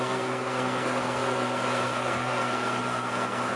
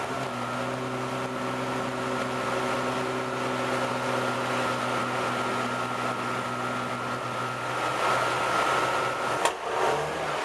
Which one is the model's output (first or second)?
first